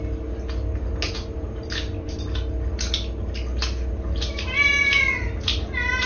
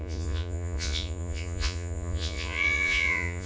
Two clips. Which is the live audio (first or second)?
first